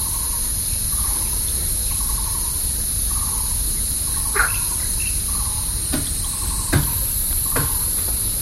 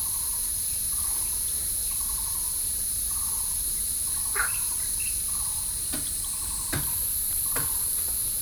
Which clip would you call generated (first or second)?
second